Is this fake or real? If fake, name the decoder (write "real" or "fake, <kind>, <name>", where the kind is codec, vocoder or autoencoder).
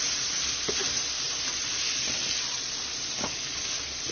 real